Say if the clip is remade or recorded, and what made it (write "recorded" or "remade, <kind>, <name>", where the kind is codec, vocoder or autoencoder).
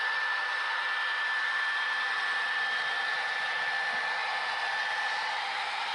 remade, vocoder, BigVGAN v2